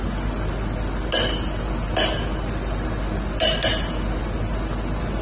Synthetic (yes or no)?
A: no